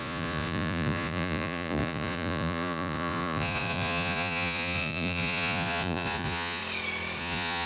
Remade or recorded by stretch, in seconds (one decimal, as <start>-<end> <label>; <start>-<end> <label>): 0.0-6.6 remade; 6.6-7.2 recorded; 7.2-7.7 remade